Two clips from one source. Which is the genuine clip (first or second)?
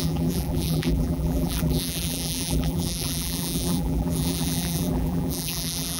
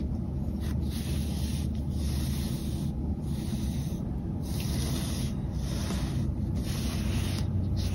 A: second